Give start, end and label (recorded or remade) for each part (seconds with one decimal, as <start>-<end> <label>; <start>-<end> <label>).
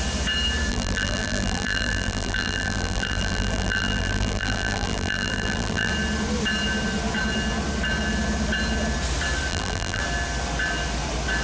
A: 0.0-0.7 recorded; 0.7-5.9 remade; 5.9-9.5 recorded; 9.5-10.0 remade; 10.0-11.4 recorded